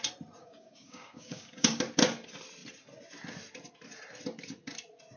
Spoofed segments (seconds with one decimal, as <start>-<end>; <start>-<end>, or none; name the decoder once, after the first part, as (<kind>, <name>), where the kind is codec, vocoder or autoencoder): 0.4-1.8 (codec, DAC)